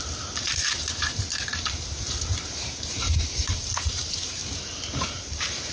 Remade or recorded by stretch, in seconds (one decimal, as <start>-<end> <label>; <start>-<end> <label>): 0.0-4.4 remade; 4.4-5.0 recorded; 5.0-5.7 remade